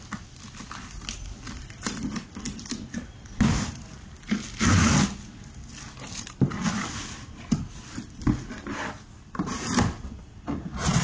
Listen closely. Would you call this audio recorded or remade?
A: recorded